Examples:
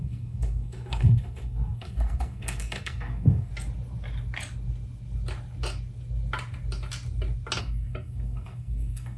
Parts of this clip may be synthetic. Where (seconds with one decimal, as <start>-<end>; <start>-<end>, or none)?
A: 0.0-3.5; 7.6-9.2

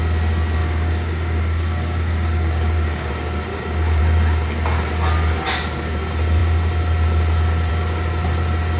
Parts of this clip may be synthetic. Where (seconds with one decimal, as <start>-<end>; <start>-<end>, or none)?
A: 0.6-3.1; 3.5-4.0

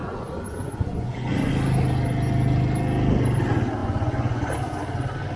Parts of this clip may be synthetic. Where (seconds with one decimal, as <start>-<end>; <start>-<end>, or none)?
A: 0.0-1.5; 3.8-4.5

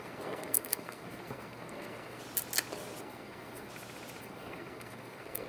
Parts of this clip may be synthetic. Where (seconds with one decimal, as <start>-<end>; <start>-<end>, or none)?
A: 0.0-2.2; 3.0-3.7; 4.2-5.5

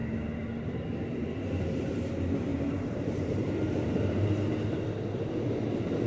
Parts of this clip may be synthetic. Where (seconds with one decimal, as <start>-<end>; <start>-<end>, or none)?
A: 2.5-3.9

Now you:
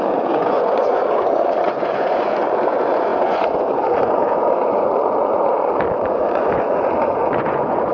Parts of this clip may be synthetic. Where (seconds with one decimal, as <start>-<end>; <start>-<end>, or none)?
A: 0.0-7.9

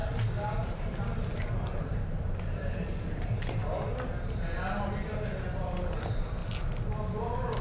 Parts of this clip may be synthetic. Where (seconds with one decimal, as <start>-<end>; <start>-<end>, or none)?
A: 0.6-3.6; 6.0-6.4